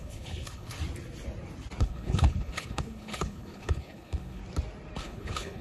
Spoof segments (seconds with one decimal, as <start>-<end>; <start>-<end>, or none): 0.0-0.8; 1.8-4.4; 5.0-5.6